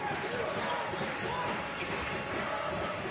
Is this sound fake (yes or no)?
no